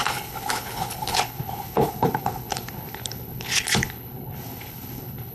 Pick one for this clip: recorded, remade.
remade